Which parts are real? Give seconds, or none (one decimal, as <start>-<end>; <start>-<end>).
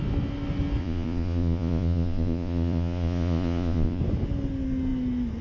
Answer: 0.0-0.8; 4.0-5.4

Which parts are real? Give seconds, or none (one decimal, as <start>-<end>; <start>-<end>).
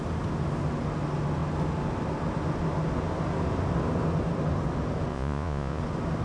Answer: 0.0-5.1; 5.8-6.2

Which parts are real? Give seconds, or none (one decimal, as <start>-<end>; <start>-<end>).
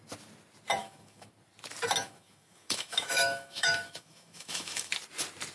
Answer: 0.0-0.8; 1.3-2.0; 4.9-5.5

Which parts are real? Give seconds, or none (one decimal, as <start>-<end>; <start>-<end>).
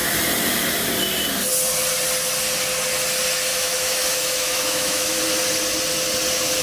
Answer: 0.0-3.5; 5.2-6.6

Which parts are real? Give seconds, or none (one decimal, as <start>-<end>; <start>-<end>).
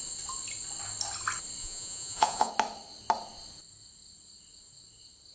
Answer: 0.0-1.6; 2.5-5.3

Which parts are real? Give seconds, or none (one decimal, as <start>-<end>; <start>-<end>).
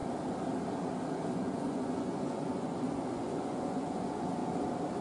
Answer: 0.0-1.3; 4.4-5.0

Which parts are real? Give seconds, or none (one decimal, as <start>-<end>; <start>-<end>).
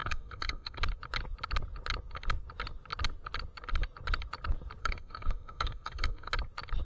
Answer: 0.8-4.8; 6.3-6.8